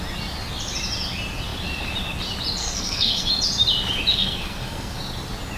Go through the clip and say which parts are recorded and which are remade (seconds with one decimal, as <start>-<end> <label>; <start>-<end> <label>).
0.0-2.6 recorded; 2.6-3.3 remade; 3.3-4.1 recorded; 4.1-5.0 remade; 5.0-5.6 recorded